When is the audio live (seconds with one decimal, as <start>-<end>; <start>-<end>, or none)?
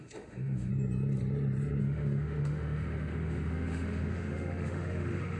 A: 0.7-1.8